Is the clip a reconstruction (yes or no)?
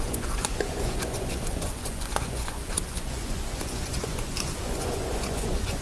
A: yes